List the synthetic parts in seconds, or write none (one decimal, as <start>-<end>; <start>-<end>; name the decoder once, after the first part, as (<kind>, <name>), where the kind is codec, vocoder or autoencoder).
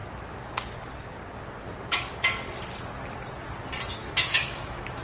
4.0-5.0 (autoencoder, DAC-VAE)